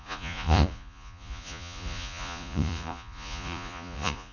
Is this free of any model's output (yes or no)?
no